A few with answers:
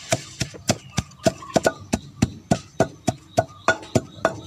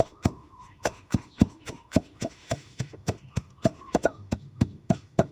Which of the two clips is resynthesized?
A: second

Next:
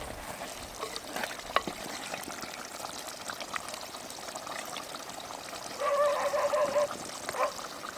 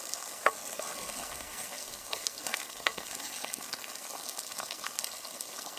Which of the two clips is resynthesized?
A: second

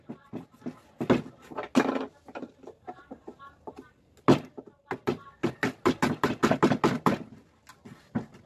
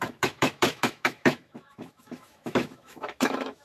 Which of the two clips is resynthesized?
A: second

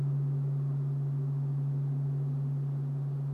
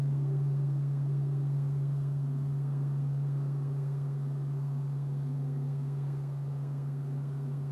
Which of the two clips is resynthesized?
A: second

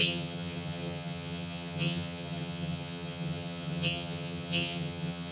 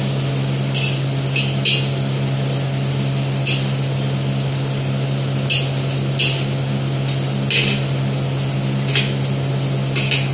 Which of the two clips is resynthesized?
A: first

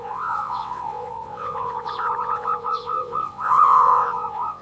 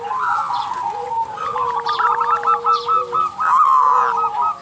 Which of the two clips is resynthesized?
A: first